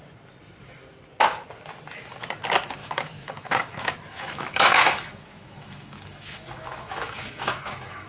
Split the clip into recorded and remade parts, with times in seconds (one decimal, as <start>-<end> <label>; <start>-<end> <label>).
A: 0.0-2.8 recorded; 2.8-8.1 remade